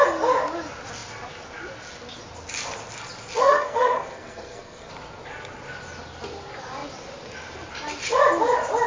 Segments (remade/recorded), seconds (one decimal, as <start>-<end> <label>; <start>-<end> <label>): 0.0-3.4 recorded; 3.4-4.9 remade; 4.9-8.9 recorded